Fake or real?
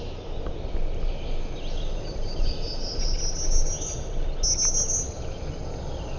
real